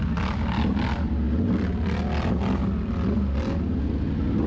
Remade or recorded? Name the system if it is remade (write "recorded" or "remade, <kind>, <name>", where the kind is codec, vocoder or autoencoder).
recorded